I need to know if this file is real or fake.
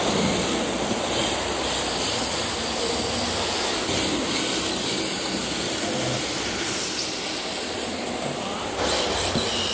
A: real